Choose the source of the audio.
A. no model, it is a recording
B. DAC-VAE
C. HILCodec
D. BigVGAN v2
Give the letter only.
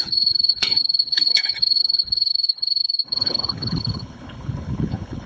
C